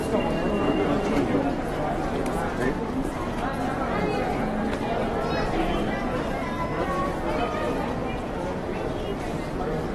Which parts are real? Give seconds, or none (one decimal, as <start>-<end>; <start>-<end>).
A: 0.0-2.7; 3.2-5.1